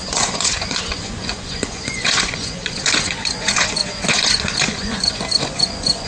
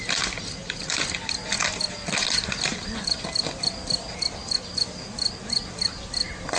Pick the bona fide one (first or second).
second